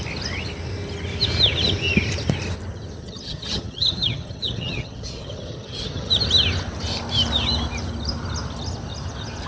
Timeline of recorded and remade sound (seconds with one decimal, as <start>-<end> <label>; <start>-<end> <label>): 0.0-3.0 recorded; 3.0-6.1 remade; 6.1-9.5 recorded